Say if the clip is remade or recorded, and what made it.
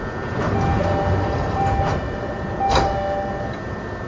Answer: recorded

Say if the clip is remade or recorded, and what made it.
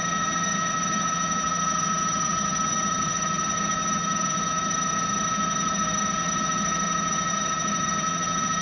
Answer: remade, vocoder, HiFi-GAN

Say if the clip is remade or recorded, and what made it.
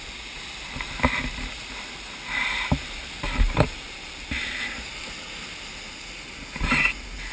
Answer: recorded